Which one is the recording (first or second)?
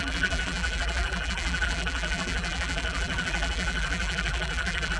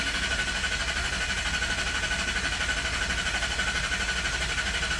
second